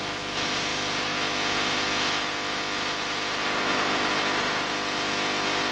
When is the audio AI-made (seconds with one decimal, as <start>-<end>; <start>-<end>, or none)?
none